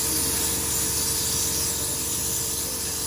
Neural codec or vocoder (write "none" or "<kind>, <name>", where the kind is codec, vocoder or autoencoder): vocoder, BigVGAN v2